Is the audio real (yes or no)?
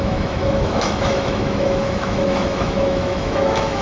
no